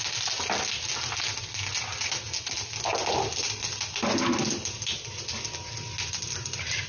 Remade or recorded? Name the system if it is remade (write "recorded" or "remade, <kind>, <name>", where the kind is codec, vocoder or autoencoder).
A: recorded